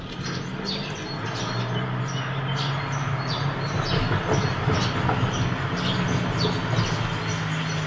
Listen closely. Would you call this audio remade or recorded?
recorded